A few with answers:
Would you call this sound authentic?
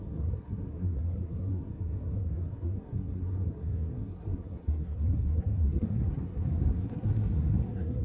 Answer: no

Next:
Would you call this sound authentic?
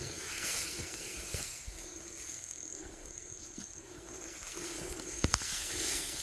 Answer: no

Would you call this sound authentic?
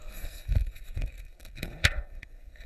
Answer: no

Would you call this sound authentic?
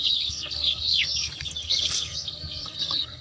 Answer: no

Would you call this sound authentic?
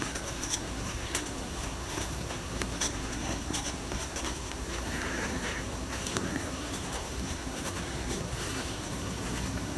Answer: no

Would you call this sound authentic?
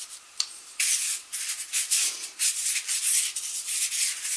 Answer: yes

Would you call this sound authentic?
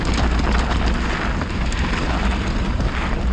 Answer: yes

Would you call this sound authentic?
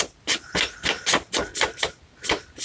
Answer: yes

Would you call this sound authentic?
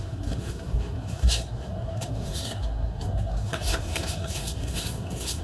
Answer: no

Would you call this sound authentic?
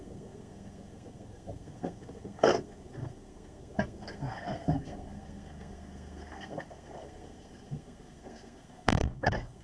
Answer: no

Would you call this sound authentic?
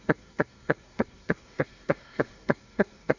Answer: no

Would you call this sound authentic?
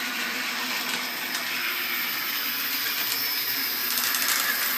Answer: yes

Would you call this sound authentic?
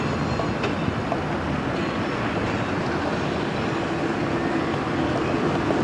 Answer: yes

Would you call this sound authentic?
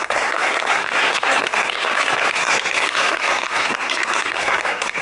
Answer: no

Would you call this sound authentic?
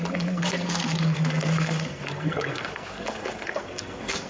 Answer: no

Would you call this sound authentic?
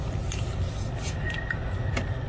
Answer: yes